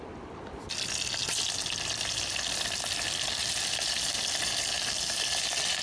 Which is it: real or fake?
real